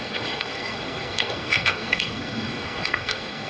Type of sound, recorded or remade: remade